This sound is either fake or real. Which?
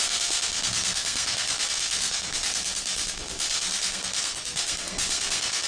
fake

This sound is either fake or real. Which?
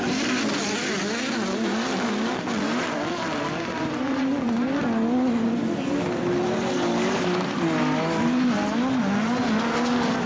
real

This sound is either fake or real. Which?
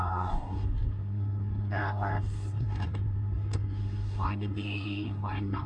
fake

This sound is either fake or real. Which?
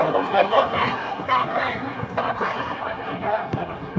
fake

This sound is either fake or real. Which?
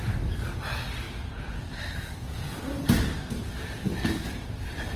real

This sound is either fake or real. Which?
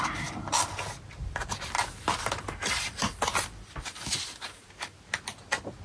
real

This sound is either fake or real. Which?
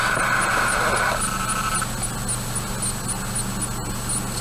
real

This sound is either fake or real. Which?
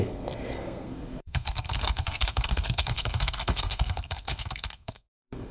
fake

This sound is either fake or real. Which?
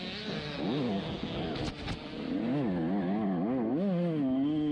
real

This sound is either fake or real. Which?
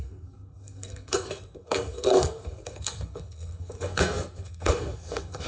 fake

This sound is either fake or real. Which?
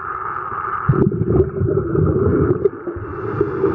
real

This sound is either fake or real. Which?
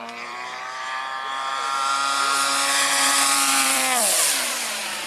fake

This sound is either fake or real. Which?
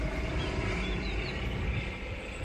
fake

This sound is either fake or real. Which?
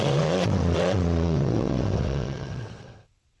fake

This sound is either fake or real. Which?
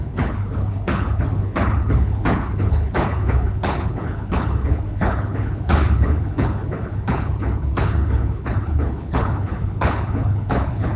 fake